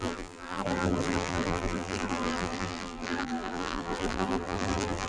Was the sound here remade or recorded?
remade